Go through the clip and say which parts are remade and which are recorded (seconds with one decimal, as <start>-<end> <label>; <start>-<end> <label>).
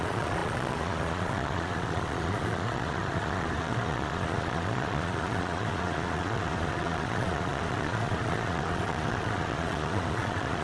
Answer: 0.0-10.6 remade